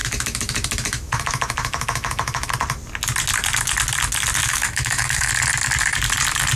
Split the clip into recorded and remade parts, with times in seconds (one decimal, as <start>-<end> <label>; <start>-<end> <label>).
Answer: 0.0-2.5 remade; 2.5-4.4 recorded; 4.4-5.3 remade; 5.3-6.6 recorded